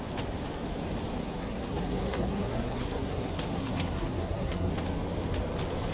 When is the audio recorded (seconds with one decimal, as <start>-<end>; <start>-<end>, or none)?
0.0-1.2; 4.7-5.9